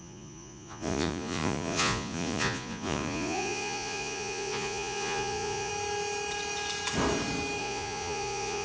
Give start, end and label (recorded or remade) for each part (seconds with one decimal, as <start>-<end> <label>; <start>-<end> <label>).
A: 0.0-5.7 remade; 5.7-7.6 recorded; 7.6-8.6 remade